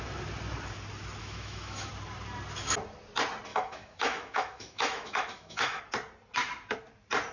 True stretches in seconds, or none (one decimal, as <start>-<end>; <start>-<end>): 0.0-1.2; 1.9-3.5; 5.8-7.3